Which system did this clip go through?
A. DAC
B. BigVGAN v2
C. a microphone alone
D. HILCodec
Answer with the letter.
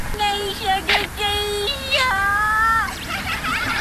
B